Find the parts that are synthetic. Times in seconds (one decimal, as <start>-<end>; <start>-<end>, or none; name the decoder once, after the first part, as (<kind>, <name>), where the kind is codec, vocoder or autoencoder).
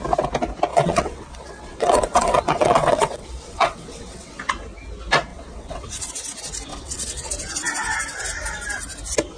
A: 0.7-4.4 (vocoder, WaveNeXt); 5.3-6.1; 6.7-7.3